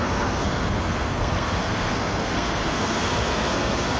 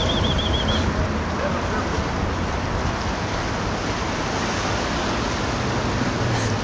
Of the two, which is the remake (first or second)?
first